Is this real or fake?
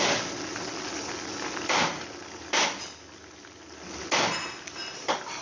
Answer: real